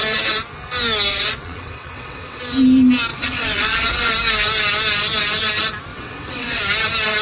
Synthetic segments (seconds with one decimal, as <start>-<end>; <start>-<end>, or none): 1.1-2.4; 3.1-4.1; 5.9-6.6